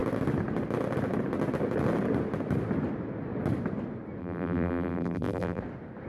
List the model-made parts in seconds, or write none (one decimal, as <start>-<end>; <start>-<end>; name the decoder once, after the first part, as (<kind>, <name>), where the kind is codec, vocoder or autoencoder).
4.2-5.6 (vocoder, BigVGAN v2)